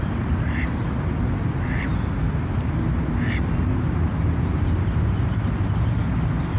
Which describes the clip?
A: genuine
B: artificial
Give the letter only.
B